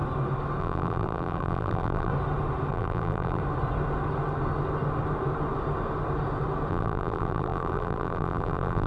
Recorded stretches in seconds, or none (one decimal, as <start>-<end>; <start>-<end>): 0.0-0.6; 2.1-2.7; 3.4-6.7